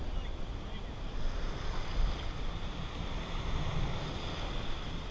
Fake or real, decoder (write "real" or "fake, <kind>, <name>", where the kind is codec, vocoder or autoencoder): real